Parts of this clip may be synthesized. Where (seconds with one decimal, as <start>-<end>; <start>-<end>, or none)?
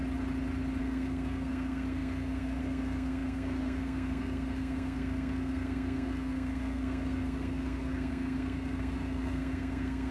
0.8-10.1